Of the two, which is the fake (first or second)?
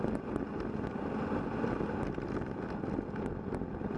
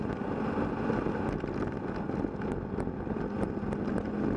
first